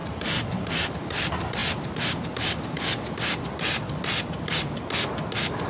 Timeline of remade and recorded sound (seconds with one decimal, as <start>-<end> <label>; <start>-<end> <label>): 0.0-5.7 recorded